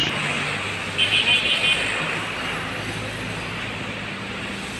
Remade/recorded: recorded